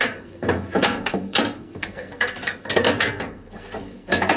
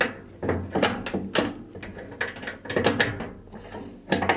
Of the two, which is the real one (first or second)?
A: second